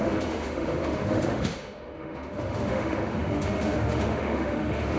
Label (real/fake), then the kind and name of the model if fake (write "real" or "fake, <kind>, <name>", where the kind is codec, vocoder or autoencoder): fake, autoencoder, DAC-VAE